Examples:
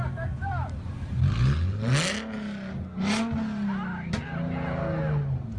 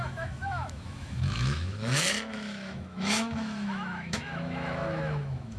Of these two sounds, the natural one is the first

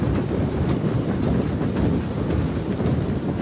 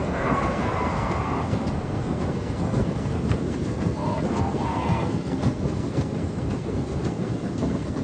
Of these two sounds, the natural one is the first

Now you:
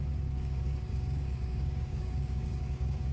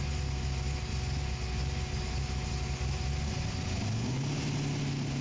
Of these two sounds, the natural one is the second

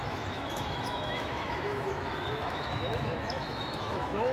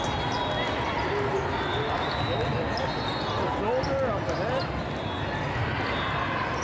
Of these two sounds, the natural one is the second